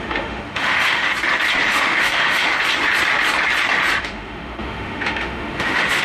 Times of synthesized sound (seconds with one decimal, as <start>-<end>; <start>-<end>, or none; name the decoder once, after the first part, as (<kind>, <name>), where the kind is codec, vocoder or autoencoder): 0.0-1.1 (autoencoder, DAC-VAE); 1.7-2.5; 4.0-6.0